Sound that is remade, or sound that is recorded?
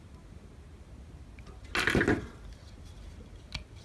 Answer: recorded